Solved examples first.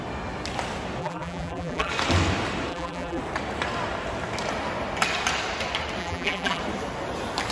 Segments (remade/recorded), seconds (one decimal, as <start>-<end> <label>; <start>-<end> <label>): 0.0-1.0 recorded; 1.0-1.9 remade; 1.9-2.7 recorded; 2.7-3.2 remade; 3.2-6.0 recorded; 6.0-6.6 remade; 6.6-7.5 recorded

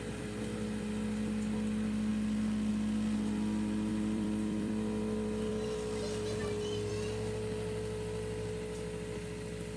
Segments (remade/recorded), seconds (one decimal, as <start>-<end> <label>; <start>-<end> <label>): 0.0-3.9 recorded; 3.9-5.5 remade; 5.5-9.8 recorded

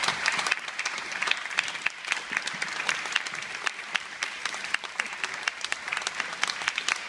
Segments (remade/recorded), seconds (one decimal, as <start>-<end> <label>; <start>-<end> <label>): 0.0-1.2 remade; 1.2-2.8 recorded; 2.8-5.9 remade; 5.9-7.1 recorded

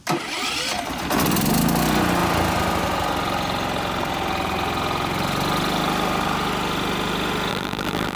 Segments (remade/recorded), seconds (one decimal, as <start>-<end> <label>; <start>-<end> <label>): 0.0-7.5 recorded; 7.5-8.2 remade